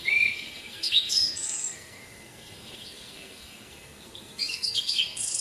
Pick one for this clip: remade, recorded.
remade